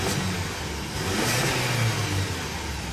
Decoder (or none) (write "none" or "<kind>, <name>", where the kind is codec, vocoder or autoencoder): none